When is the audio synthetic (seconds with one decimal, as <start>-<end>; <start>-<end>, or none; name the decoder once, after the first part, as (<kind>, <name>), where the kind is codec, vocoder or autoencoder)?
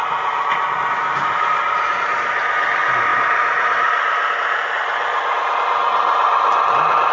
none